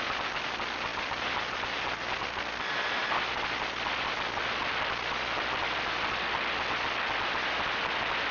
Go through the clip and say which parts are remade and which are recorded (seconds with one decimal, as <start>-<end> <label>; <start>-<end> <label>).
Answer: 0.0-8.3 recorded